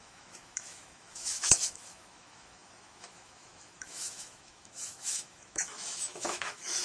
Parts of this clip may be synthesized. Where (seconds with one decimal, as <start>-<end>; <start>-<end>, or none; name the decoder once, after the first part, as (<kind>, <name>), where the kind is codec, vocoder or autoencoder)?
0.0-6.8 (autoencoder, DAC-VAE)